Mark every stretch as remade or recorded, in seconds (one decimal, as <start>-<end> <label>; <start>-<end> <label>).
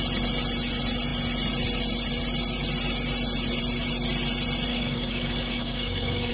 0.0-4.7 recorded; 4.7-6.3 remade